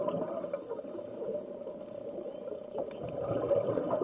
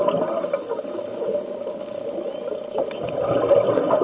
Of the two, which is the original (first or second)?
second